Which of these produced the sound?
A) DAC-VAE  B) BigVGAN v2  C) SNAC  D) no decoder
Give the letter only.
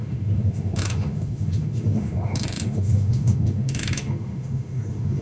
A